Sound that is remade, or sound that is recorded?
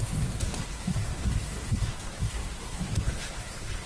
remade